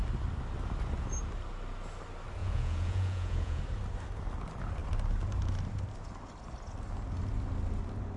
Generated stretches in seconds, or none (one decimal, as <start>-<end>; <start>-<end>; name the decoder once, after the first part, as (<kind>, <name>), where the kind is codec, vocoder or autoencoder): 2.4-3.6 (vocoder, Vocos)